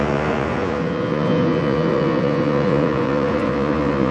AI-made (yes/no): yes